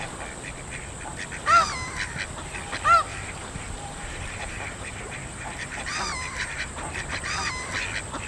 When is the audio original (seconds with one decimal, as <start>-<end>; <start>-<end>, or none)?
0.0-3.1; 7.5-8.3